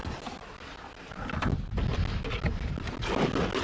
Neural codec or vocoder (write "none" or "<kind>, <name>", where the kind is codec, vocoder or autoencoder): none